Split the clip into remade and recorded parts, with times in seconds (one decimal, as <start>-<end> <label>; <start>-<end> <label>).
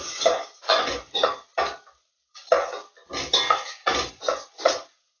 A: 0.0-1.5 remade; 1.5-3.5 recorded; 3.5-5.2 remade